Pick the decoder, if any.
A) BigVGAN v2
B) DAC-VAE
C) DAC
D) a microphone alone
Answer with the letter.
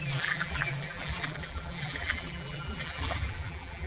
A